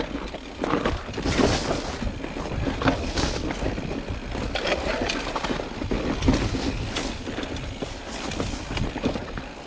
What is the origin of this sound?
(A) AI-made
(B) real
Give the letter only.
B